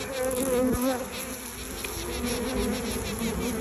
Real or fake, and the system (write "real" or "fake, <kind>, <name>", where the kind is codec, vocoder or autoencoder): real